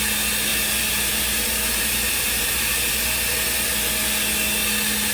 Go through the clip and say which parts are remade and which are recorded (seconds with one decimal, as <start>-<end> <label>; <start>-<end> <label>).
0.0-0.5 recorded; 0.5-2.9 remade; 2.9-5.1 recorded